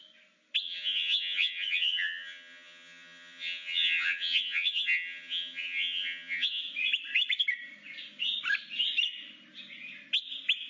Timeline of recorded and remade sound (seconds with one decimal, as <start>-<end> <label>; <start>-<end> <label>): 0.0-0.6 recorded; 0.6-6.6 remade; 6.6-10.7 recorded